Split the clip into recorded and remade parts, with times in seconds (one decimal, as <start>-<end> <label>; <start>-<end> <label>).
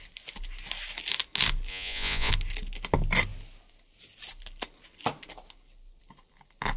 0.0-1.7 recorded; 1.7-2.3 remade; 2.3-6.8 recorded